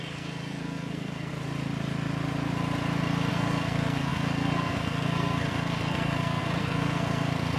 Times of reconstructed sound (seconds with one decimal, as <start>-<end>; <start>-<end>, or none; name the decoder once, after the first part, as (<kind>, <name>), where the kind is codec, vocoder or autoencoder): 0.0-1.3 (codec, SNAC); 3.3-7.6